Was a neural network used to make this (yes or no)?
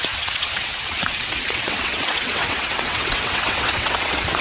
yes